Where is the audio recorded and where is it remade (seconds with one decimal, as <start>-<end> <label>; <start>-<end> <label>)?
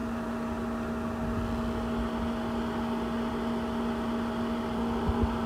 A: 0.0-5.5 recorded